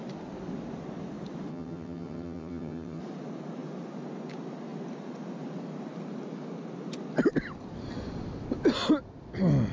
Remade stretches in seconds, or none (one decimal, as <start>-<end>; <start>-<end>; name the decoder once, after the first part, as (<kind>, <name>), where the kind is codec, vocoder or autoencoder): 1.5-3.0 (vocoder, HiFi-GAN)

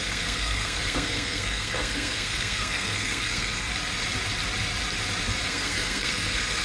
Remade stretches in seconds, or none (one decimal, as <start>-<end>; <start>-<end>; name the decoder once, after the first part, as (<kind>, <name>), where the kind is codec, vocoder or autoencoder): 0.0-3.7 (codec, SNAC); 5.5-6.6

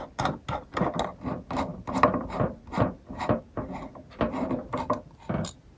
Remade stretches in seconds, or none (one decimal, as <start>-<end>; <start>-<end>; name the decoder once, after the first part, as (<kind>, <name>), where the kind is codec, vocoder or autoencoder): none

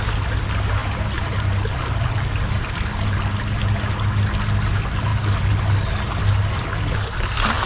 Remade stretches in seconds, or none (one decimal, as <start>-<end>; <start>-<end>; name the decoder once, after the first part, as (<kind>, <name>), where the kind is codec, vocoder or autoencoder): none

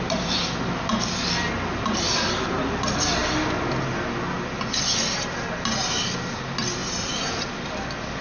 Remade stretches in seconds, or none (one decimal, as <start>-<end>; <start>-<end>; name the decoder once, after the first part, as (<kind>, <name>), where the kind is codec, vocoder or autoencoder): 0.0-3.2 (vocoder, BigVGAN v2); 6.3-6.8; 7.4-8.2

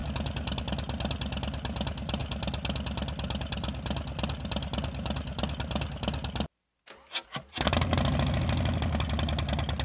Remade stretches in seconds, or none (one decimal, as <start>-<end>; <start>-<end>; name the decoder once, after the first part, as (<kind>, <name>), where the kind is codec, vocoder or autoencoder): none

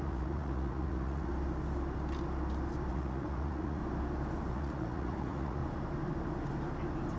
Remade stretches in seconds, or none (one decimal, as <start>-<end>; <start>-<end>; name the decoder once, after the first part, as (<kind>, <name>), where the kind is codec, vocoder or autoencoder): 0.0-1.3 (vocoder, Vocos); 2.9-3.8; 4.5-5.6

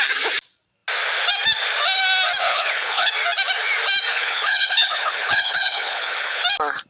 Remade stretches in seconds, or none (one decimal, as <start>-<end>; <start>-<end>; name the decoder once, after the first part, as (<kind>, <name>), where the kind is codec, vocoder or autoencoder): 2.4-3.1 (codec, HILCodec); 4.1-6.4